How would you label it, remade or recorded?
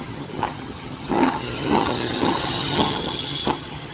remade